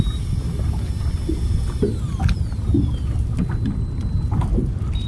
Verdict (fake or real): real